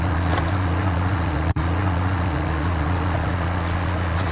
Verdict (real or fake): fake